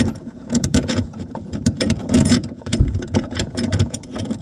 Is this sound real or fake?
fake